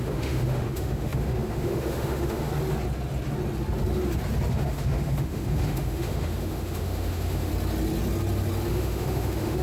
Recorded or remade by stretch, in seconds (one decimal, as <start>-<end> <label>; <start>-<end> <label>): 0.0-2.5 remade; 2.5-4.5 recorded; 4.5-7.5 remade; 7.5-8.7 recorded; 8.7-9.6 remade